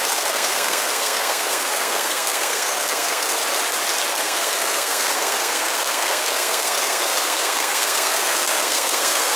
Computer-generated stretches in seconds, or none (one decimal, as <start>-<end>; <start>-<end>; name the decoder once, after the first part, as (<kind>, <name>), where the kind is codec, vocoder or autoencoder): 0.0-3.4 (codec, SNAC); 4.1-9.4